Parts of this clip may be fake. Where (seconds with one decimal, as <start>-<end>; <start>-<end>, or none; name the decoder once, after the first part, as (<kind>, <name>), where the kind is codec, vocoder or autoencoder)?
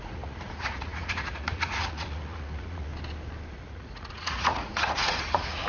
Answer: 0.0-2.9 (vocoder, Vocos); 3.5-5.7